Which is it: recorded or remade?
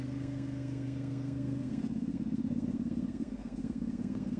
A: remade